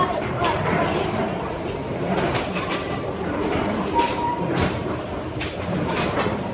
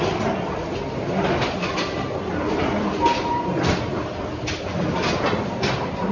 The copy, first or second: first